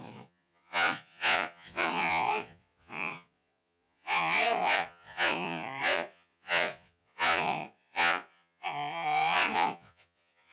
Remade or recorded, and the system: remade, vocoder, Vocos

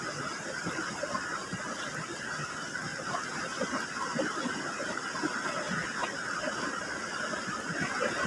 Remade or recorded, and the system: recorded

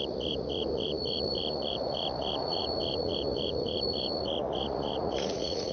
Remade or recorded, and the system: remade, vocoder, Vocos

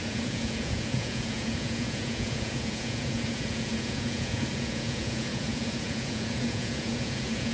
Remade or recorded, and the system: remade, vocoder, Vocos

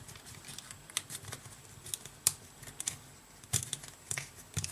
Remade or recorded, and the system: recorded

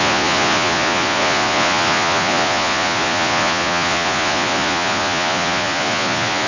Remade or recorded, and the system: remade, vocoder, Vocos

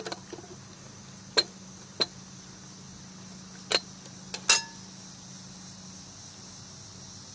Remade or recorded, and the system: recorded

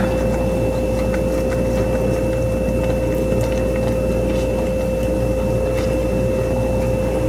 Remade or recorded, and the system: recorded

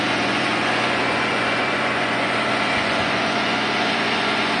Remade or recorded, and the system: remade, vocoder, Vocos